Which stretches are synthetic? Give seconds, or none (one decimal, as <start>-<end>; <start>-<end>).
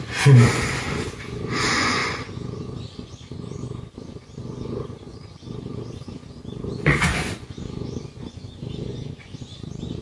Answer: 0.0-10.0